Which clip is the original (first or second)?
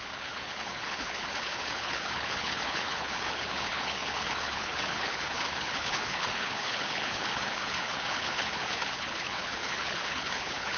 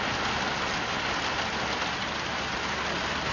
second